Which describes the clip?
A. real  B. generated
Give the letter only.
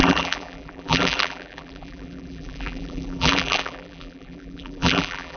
B